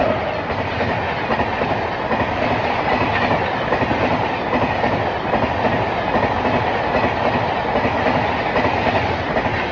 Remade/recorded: recorded